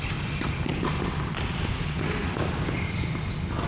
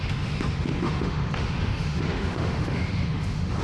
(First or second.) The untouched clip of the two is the first